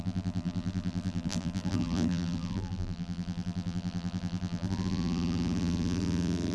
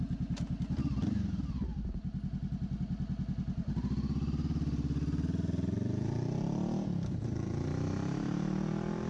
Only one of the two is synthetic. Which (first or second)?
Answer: first